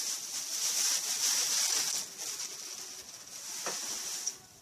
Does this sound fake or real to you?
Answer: real